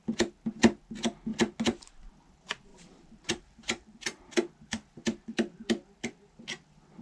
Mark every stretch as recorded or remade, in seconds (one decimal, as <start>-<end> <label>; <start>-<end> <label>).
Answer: 0.0-2.7 recorded; 2.7-4.3 remade; 4.3-7.0 recorded